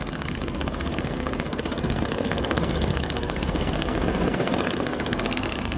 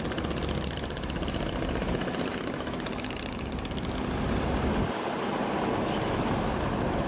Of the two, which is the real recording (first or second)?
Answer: second